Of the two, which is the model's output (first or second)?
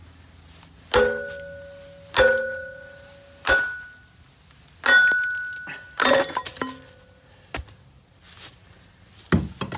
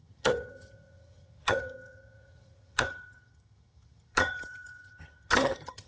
second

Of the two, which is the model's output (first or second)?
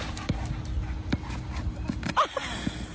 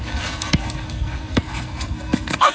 second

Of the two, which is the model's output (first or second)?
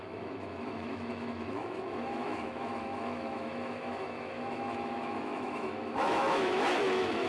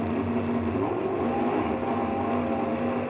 first